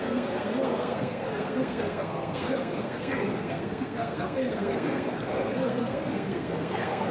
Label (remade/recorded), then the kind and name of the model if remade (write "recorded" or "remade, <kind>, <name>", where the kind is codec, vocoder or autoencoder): remade, codec, SNAC